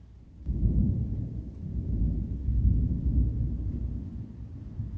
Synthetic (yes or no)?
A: no